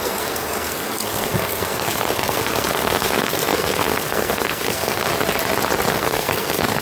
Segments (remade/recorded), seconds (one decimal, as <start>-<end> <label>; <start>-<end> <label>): 0.0-5.1 remade; 5.1-5.9 recorded; 5.9-6.8 remade